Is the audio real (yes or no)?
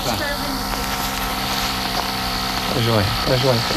yes